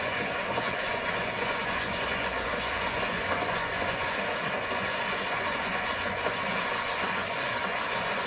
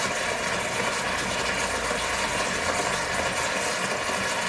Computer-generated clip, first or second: first